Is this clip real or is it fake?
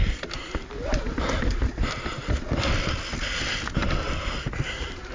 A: real